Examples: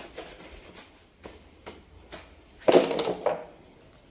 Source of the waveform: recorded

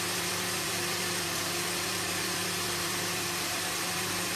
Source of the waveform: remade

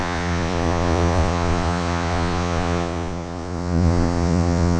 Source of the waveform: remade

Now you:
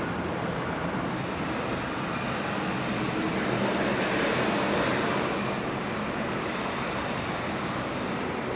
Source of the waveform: recorded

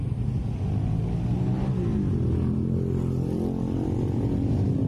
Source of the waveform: recorded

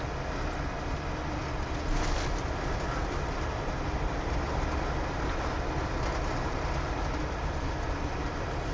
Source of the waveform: recorded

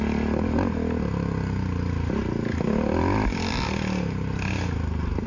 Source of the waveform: recorded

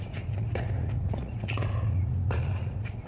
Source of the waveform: remade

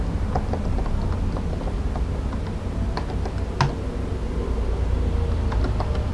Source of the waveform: recorded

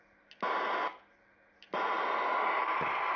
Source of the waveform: recorded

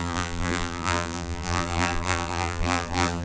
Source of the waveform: remade